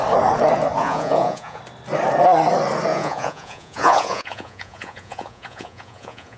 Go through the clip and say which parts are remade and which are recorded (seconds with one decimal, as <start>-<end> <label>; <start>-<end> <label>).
0.0-0.8 recorded; 0.8-1.6 remade; 1.6-2.9 recorded; 2.9-6.4 remade

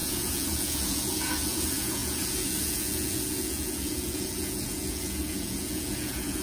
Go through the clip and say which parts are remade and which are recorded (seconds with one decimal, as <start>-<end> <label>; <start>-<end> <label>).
0.0-6.4 remade